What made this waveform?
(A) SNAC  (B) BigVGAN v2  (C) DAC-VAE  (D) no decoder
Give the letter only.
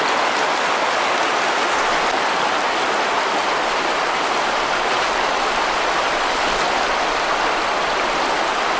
D